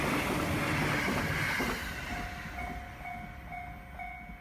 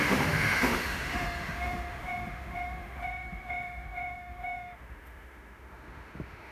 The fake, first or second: second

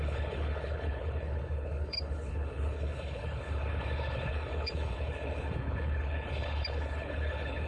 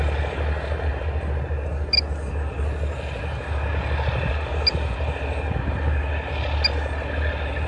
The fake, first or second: first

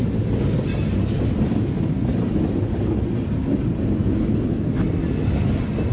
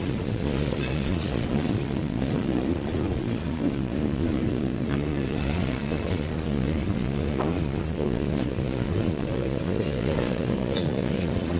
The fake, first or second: second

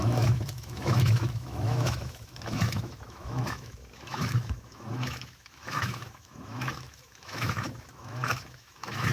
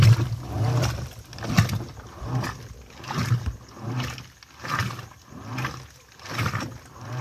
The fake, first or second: first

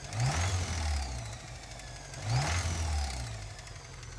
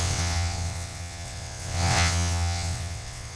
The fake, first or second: second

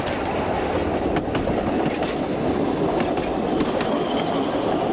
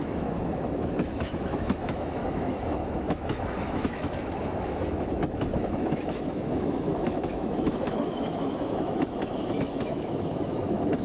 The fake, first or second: second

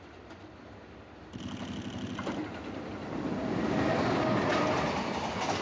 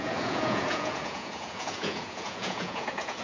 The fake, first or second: second